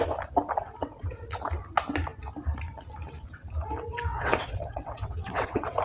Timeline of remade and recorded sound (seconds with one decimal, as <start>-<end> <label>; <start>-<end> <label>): 0.0-0.6 recorded; 0.6-1.2 remade; 1.2-4.1 recorded; 4.1-5.8 remade